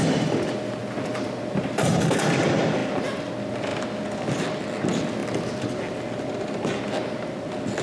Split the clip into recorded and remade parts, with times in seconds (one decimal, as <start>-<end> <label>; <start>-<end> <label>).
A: 0.0-0.8 recorded; 0.8-2.1 remade; 2.1-2.8 recorded; 2.8-3.3 remade; 3.3-5.2 recorded; 5.2-6.3 remade; 6.3-7.8 recorded